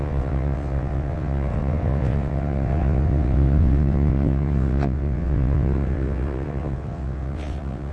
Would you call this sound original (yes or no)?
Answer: no